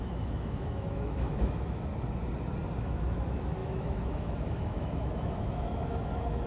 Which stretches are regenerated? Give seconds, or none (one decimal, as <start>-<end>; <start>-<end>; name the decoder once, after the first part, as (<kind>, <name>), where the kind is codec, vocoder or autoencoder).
0.0-1.9 (autoencoder, DAC-VAE); 2.8-6.5